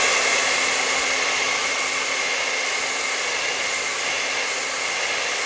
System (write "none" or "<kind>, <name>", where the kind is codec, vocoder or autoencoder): none